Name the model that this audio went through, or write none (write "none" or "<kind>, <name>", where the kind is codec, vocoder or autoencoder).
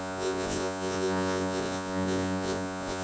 vocoder, Vocos